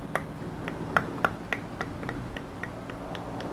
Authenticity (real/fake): fake